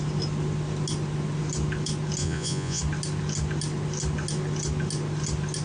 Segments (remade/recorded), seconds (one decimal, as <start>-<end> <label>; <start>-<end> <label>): 0.0-2.2 recorded; 2.2-2.8 remade; 2.8-5.6 recorded